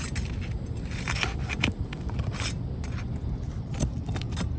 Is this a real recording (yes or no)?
yes